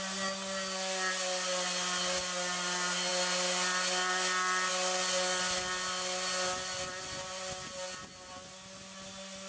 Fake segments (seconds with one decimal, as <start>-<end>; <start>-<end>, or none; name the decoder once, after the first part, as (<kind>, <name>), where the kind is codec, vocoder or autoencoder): none